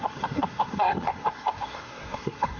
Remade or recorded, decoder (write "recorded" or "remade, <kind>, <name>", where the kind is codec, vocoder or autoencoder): remade, codec, SNAC